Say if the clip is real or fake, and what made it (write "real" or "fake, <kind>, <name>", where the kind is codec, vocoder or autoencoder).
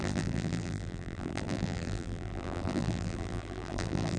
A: fake, vocoder, BigVGAN v2